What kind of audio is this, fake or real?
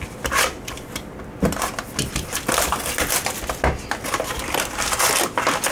real